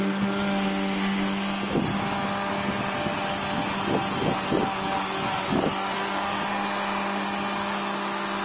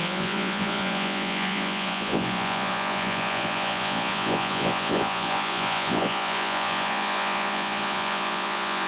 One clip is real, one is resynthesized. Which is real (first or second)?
first